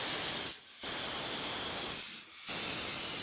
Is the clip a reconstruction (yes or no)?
no